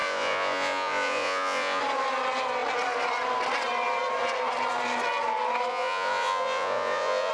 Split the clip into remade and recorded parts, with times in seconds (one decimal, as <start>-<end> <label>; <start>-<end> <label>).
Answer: 0.0-1.8 remade; 1.8-5.7 recorded; 5.7-7.3 remade